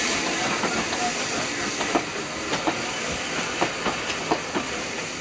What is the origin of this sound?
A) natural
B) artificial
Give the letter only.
A